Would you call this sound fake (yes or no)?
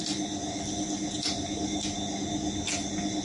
no